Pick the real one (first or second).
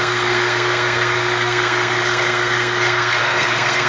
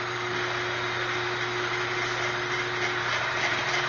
second